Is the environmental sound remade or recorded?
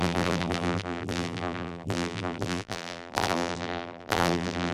remade